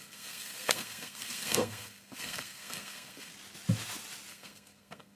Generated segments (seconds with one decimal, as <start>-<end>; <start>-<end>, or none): 0.0-3.3; 4.3-5.2